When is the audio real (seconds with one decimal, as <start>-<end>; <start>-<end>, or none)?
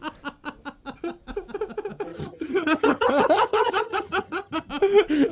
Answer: 0.0-2.1; 4.7-5.3